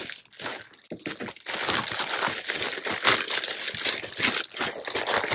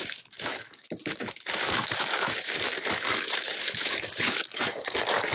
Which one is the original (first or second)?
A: first